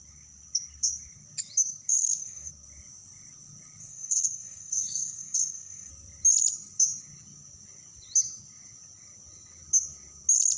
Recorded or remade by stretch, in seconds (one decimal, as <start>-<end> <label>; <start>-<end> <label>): 0.0-1.9 recorded; 1.9-2.5 remade; 2.5-3.8 recorded; 3.8-5.9 remade; 5.9-10.6 recorded